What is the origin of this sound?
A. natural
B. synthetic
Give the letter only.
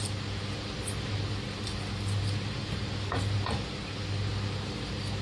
B